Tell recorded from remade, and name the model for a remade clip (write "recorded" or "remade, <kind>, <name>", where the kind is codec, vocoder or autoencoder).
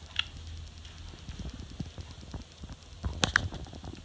recorded